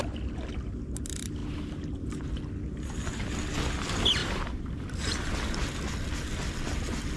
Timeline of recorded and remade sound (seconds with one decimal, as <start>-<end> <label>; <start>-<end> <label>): 0.0-4.2 recorded; 4.2-5.3 remade; 5.3-7.2 recorded